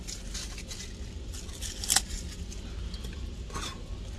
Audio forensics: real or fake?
real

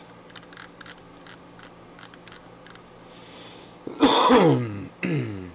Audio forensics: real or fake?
real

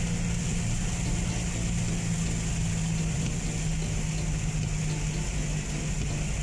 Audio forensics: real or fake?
real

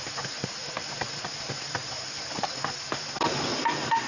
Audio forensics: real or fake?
real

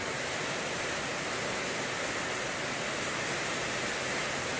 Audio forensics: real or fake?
real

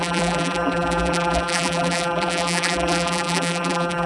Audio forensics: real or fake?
fake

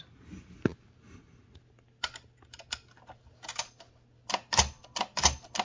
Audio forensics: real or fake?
real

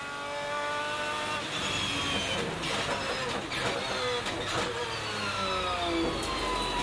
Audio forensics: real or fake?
real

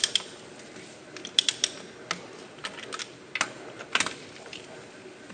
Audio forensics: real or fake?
real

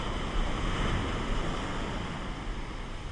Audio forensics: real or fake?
real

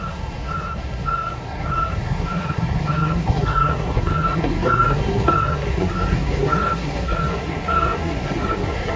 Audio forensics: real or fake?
fake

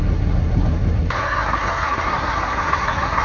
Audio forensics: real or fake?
fake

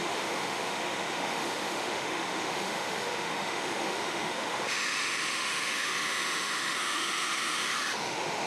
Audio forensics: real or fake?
fake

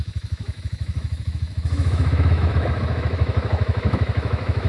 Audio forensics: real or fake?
fake